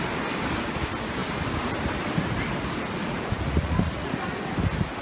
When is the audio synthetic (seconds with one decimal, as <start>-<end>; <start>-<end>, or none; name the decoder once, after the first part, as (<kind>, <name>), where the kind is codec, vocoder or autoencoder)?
3.0-4.1 (vocoder, Vocos)